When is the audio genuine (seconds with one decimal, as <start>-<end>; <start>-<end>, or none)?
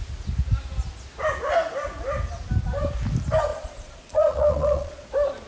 0.0-3.5; 5.1-5.5